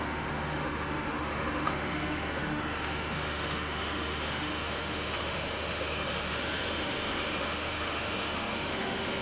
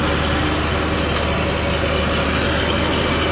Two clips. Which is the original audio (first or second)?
second